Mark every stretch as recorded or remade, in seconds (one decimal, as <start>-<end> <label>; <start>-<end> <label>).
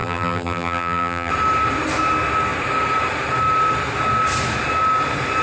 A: 0.0-1.3 remade; 1.3-5.4 recorded